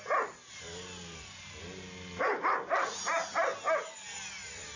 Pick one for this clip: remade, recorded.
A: recorded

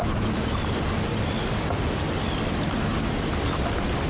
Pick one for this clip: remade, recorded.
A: recorded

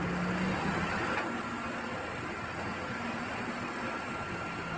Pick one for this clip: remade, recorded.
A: recorded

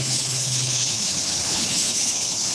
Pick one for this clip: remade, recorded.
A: remade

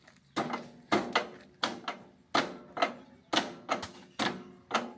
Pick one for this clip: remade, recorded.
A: recorded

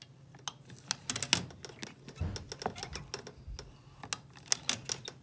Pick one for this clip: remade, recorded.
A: recorded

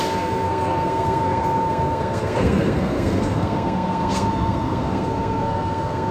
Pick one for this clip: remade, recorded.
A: remade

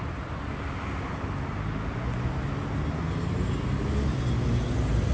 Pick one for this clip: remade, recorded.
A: recorded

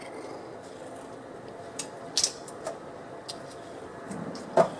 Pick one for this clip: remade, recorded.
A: recorded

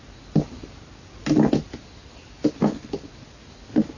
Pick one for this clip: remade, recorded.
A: recorded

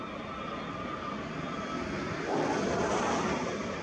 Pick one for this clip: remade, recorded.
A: recorded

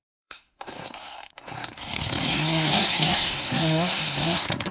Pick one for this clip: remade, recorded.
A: remade